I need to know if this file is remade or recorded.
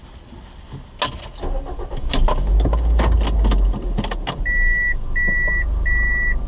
recorded